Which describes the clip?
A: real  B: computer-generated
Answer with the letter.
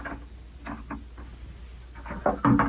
A